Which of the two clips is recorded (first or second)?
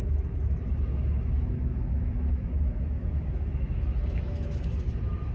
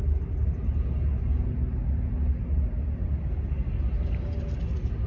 second